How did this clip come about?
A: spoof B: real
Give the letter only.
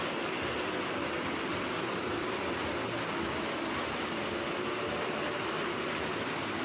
B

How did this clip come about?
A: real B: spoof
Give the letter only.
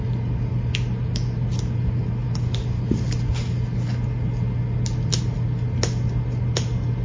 A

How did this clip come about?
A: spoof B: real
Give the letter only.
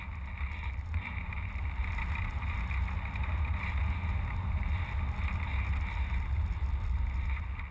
B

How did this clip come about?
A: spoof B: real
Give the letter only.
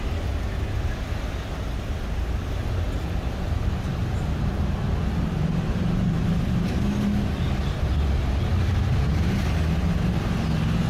B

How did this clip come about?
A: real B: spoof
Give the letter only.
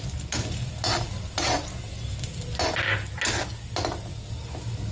A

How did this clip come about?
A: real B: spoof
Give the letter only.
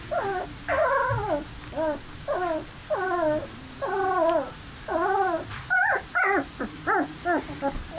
A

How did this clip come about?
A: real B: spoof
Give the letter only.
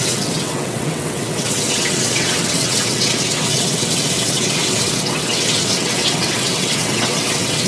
B